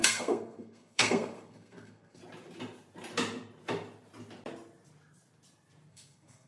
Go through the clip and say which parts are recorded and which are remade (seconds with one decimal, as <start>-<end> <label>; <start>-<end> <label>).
0.0-2.2 remade; 2.2-5.9 recorded; 5.9-6.5 remade